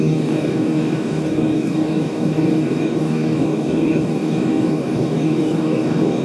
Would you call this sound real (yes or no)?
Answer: no